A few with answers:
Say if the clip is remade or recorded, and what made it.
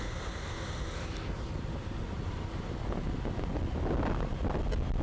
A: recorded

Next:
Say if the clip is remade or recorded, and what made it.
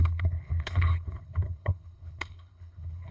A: remade, codec, HILCodec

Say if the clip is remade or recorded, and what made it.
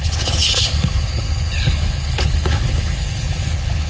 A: remade, codec, HILCodec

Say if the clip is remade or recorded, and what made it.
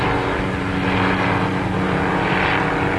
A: recorded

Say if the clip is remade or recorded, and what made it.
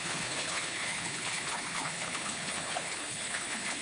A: remade, codec, HILCodec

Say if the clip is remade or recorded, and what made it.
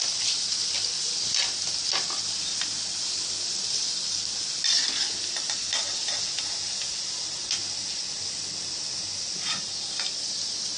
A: recorded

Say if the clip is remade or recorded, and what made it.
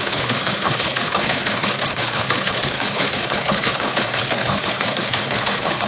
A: remade, codec, HILCodec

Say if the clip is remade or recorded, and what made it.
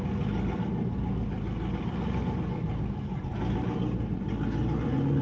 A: recorded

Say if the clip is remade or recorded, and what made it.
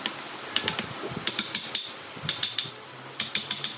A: recorded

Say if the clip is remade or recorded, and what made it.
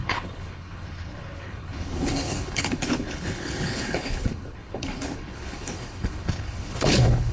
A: remade, codec, HILCodec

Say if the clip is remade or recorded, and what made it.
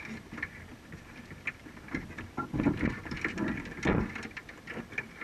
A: recorded